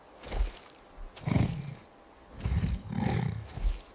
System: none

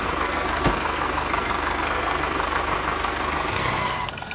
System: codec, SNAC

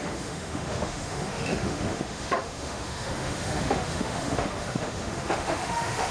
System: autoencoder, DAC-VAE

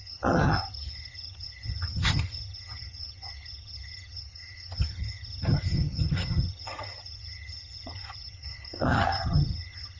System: vocoder, HiFi-GAN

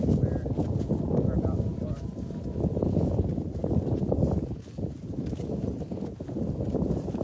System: none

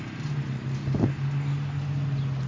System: none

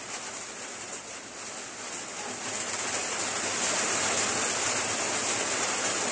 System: none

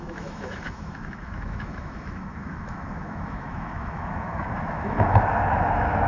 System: autoencoder, DAC-VAE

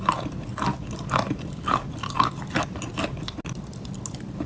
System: none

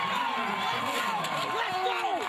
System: none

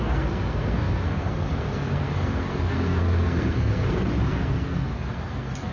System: codec, SNAC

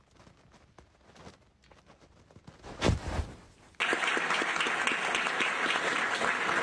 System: none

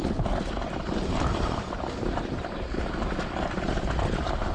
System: none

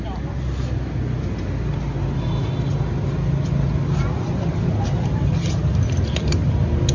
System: none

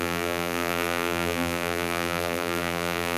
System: vocoder, BigVGAN v2